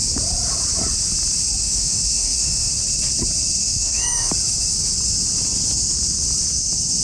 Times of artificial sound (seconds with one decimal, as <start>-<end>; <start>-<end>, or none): 1.6-2.7; 3.6-4.3